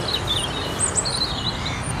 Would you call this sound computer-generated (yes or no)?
no